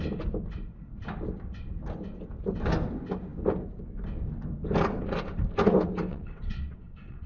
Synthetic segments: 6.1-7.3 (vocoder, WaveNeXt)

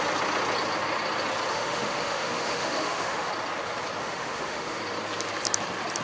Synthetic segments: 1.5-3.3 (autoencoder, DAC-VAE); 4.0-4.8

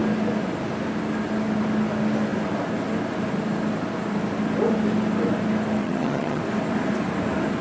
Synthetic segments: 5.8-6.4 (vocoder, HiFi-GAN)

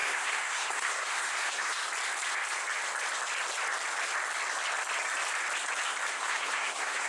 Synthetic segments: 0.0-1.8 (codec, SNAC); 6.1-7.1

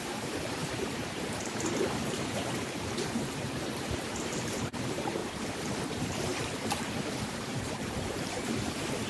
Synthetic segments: 0.0-5.2 (vocoder, BigVGAN v2); 5.8-9.1

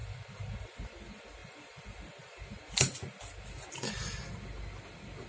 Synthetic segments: none

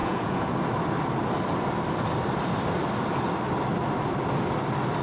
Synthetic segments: 0.0-0.5 (vocoder, Vocos)

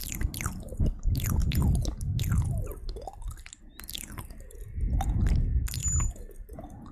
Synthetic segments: none